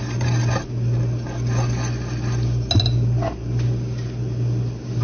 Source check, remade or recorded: recorded